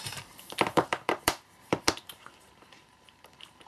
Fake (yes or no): yes